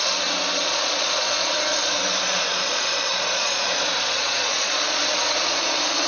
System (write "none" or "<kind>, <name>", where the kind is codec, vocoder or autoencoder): vocoder, Vocos